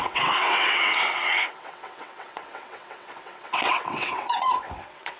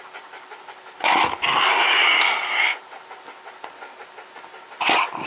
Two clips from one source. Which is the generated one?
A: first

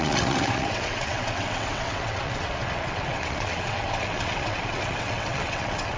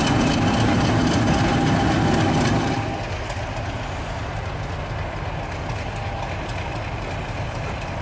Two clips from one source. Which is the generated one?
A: first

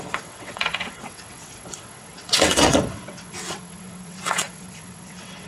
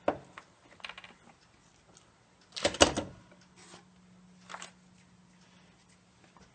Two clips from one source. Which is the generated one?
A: first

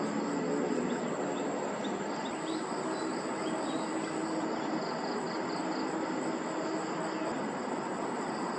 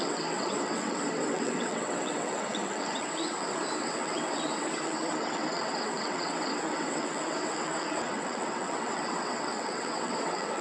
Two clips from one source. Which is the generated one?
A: second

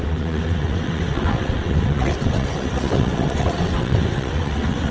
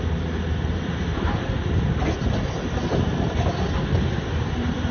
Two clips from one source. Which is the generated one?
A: first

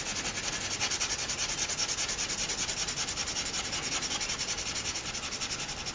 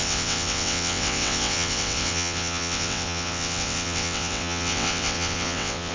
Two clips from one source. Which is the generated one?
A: second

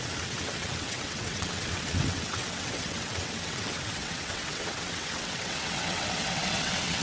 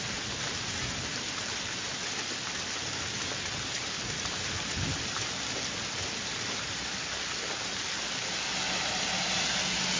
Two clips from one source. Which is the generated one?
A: first